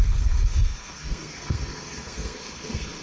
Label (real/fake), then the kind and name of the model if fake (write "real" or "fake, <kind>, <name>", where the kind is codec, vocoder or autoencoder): fake, codec, SNAC